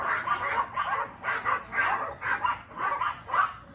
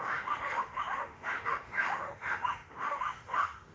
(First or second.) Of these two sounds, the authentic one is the first